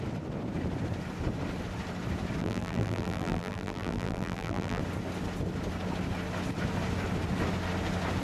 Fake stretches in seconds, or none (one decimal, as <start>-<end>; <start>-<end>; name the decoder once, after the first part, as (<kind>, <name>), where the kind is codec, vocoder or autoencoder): 2.4-4.8 (vocoder, BigVGAN v2)